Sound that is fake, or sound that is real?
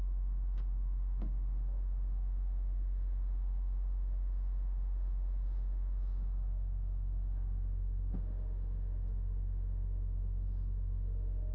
fake